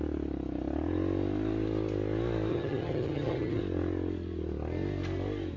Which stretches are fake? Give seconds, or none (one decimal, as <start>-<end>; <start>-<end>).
2.5-3.6